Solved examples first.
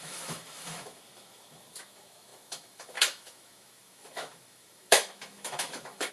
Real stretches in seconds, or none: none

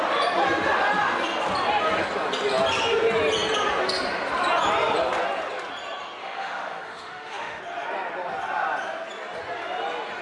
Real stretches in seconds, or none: 0.0-6.2; 7.6-10.2

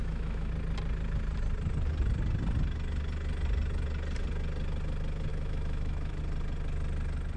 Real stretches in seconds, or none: 0.5-5.3; 6.2-7.4

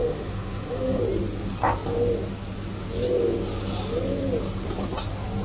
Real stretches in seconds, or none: 1.0-5.4

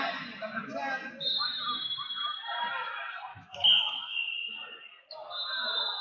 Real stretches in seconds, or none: 0.0-3.3; 3.8-6.0

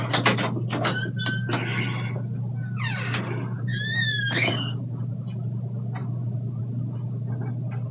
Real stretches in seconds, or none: 0.0-3.7; 4.5-7.9

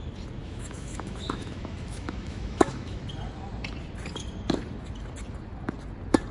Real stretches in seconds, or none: 0.0-0.4; 3.0-6.3

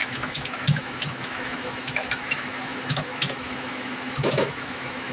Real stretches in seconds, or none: none